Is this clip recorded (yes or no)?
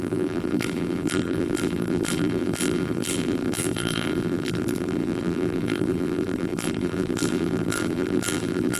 no